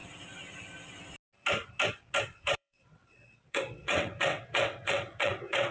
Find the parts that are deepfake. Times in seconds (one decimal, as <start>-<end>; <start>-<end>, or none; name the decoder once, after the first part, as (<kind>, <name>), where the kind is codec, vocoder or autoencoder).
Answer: 2.2-5.7 (vocoder, WaveNeXt)